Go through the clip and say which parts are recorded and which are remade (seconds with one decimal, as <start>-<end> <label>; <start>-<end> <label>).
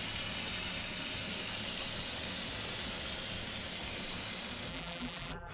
0.0-4.7 recorded; 4.7-5.5 remade